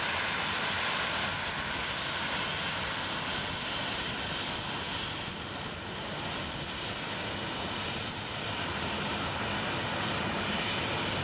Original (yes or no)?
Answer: yes